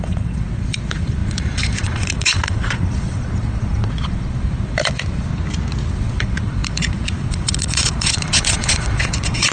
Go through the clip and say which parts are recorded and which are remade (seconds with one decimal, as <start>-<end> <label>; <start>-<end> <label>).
0.0-5.3 remade; 5.3-5.9 recorded; 5.9-9.5 remade